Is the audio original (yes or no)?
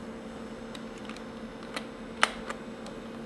yes